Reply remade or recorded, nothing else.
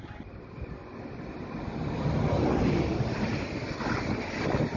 recorded